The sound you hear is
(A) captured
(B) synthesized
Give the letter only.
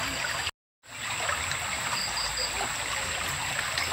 A